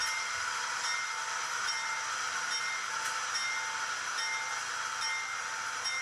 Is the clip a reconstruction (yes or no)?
no